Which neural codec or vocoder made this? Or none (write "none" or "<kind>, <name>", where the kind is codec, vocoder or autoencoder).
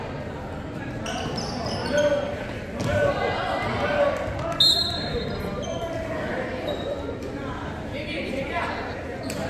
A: none